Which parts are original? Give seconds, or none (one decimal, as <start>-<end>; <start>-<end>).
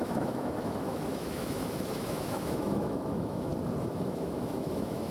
3.5-4.1